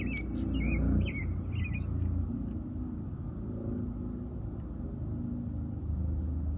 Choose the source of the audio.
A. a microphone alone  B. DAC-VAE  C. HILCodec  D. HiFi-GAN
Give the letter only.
A